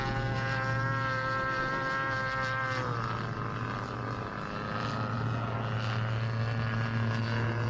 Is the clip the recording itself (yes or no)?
yes